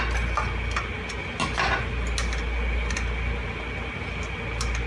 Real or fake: real